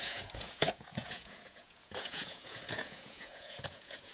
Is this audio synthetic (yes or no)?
yes